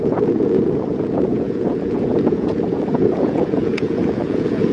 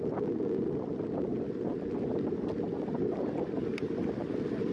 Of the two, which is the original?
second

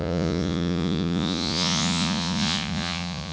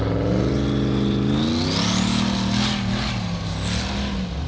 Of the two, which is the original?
second